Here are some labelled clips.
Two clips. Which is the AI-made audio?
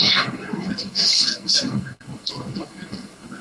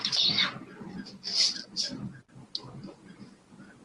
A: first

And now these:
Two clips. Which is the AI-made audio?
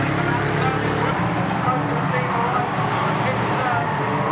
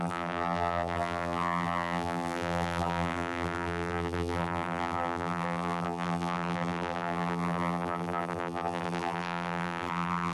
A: second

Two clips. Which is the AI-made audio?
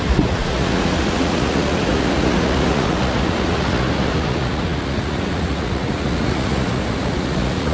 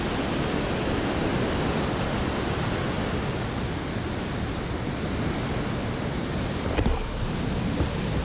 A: first